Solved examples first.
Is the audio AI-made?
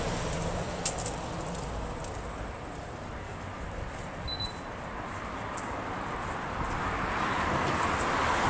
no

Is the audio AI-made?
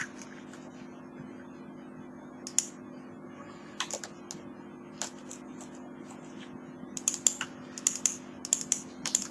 no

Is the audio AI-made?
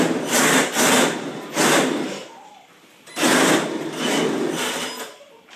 no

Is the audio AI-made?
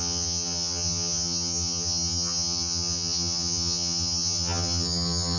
yes